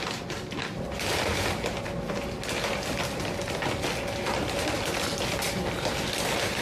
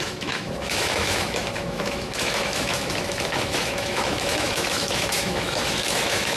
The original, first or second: first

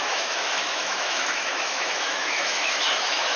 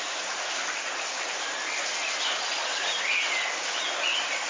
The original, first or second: second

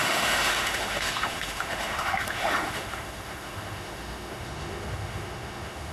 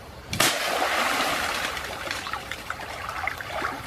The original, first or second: second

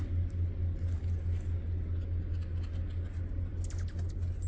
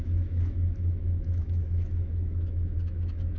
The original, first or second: first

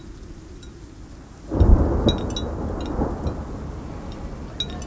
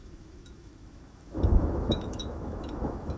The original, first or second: first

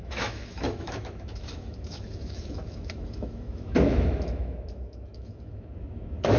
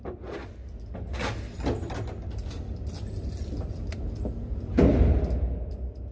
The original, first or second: second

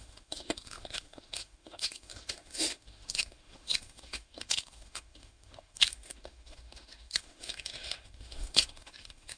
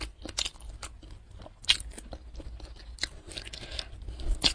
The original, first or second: second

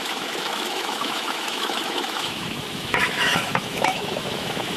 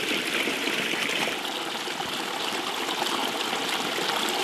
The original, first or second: second